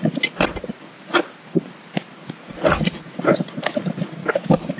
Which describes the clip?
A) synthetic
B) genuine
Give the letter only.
B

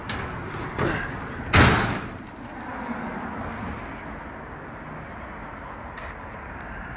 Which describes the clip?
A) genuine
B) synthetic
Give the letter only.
A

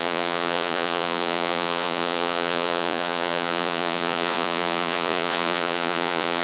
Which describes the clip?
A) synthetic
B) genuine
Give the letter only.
A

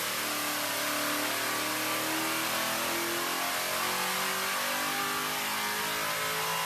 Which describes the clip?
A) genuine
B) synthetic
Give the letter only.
A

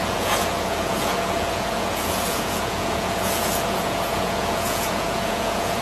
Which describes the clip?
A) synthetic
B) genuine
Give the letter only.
A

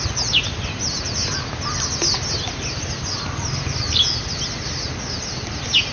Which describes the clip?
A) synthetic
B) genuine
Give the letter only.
B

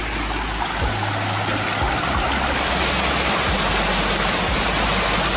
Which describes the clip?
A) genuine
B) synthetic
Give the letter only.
A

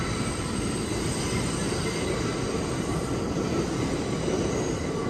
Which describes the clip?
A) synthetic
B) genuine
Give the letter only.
B